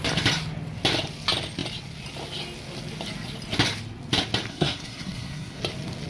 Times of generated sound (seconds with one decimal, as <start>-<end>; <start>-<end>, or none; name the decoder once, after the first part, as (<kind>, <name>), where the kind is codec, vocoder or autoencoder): 4.5-5.6 (codec, SNAC)